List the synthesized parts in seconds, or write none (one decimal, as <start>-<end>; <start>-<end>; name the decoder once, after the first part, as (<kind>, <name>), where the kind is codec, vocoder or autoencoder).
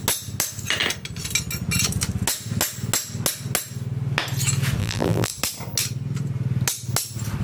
4.8-5.3 (vocoder, BigVGAN v2)